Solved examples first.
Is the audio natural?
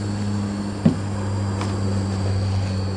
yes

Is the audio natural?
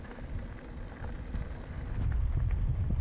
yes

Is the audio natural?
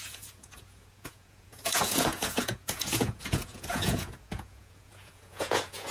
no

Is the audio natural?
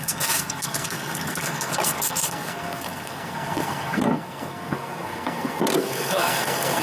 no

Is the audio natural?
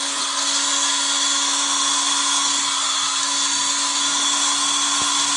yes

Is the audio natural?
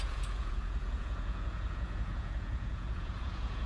no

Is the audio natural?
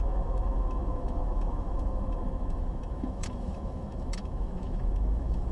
no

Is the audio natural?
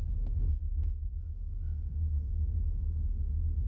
no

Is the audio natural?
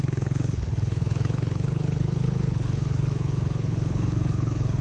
no